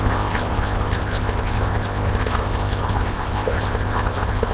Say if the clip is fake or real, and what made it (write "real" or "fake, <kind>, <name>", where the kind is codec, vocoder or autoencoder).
fake, codec, ZipCodec